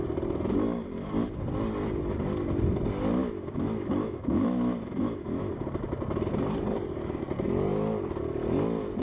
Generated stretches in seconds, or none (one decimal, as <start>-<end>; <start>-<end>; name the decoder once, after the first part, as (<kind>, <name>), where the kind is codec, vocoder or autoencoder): 3.2-5.5 (autoencoder, DAC-VAE)